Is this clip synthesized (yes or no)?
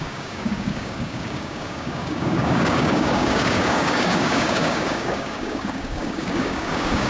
yes